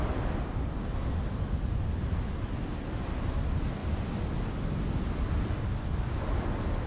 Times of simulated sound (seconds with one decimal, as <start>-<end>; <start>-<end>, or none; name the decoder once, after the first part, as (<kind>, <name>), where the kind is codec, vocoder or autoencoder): none